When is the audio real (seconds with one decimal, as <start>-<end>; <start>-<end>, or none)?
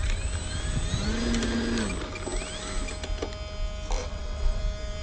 0.0-4.0; 4.6-5.0